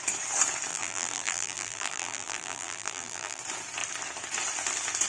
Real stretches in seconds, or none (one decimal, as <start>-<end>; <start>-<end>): 0.0-0.7; 3.4-5.1